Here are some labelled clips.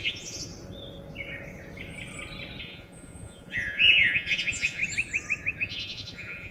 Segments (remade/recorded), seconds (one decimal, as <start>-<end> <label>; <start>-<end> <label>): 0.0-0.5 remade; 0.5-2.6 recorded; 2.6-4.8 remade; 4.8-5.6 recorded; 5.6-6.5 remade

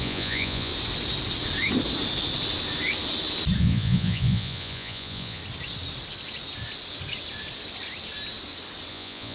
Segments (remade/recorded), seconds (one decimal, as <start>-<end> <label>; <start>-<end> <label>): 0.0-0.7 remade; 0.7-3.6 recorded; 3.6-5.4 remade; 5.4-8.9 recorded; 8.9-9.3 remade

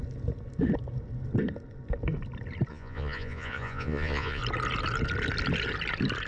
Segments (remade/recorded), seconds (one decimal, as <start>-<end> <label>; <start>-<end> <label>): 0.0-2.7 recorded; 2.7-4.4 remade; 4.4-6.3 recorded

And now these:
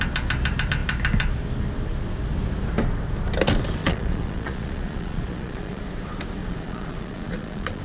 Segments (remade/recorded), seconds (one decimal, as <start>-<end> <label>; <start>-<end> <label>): 0.0-3.8 recorded; 3.8-5.8 remade; 5.8-6.4 recorded; 6.4-7.8 remade